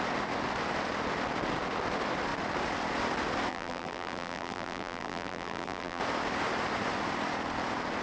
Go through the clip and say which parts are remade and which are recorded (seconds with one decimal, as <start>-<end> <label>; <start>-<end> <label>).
0.0-3.5 recorded; 3.5-6.0 remade; 6.0-8.0 recorded